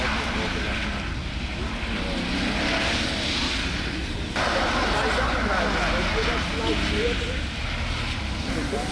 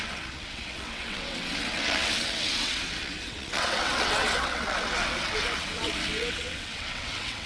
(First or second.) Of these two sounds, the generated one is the second